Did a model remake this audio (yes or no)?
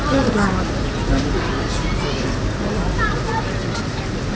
no